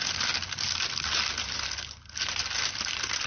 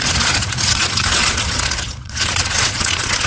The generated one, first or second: second